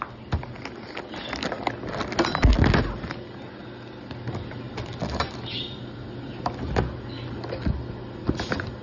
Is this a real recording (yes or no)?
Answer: yes